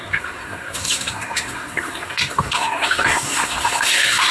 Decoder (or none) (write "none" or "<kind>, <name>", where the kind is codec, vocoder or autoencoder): codec, SNAC